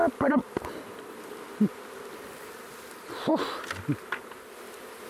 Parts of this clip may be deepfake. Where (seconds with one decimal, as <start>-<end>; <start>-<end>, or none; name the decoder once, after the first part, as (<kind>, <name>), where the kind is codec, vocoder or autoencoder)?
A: 0.0-3.3 (vocoder, BigVGAN v2); 3.8-5.1